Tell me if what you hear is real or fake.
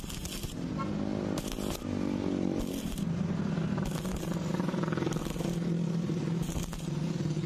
real